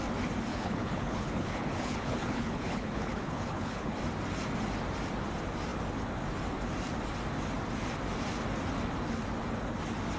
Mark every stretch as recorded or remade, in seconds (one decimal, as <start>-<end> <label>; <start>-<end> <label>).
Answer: 0.0-0.5 recorded; 0.5-4.0 remade; 4.0-10.2 recorded